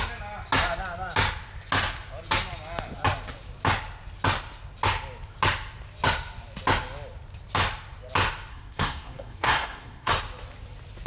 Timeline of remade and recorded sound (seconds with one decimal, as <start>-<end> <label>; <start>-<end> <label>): 0.0-8.5 recorded; 8.5-10.1 remade; 10.1-11.1 recorded

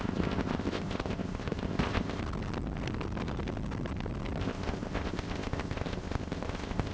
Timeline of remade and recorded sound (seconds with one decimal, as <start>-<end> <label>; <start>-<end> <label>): 0.0-2.2 remade; 2.2-4.4 recorded; 4.4-6.9 remade